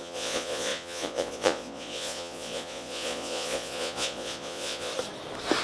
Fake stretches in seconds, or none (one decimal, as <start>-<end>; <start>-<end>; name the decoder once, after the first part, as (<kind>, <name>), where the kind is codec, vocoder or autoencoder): 0.0-4.9 (vocoder, Vocos)